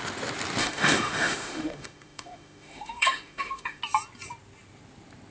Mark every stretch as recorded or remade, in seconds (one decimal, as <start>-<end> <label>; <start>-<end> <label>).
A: 0.0-0.6 recorded; 0.6-3.8 remade; 3.8-5.3 recorded